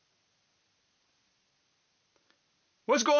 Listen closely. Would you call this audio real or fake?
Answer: real